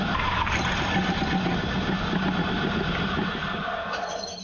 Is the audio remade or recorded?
recorded